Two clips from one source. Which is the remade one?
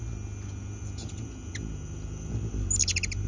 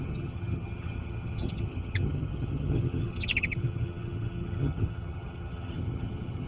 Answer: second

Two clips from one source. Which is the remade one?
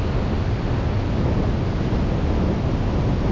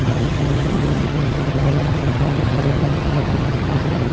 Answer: second